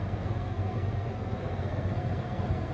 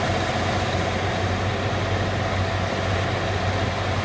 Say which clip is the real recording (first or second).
second